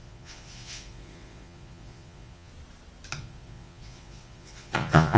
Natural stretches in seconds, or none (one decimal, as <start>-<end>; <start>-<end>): 2.5-3.2